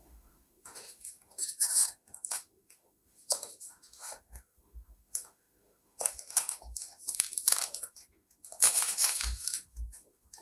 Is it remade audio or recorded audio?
remade